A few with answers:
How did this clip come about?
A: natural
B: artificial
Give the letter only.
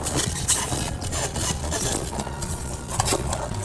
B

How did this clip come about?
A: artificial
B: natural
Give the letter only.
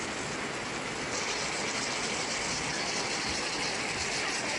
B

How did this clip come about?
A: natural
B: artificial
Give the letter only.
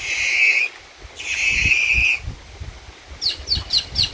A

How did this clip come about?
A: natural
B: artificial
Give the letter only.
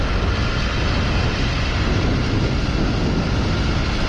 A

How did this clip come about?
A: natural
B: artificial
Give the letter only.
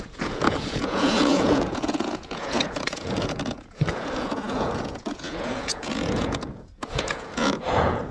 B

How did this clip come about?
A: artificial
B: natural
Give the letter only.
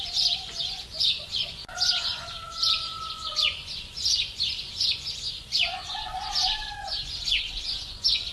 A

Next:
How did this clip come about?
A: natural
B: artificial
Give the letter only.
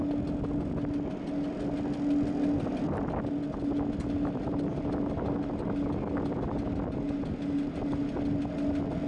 A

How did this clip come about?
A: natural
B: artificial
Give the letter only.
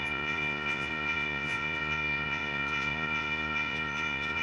B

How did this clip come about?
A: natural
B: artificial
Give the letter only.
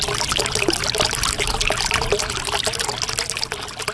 A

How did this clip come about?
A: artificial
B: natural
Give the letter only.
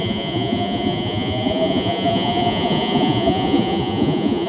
A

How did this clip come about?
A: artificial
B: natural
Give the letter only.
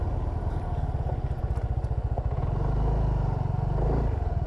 B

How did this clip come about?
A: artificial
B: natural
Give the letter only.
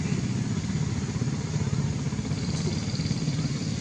B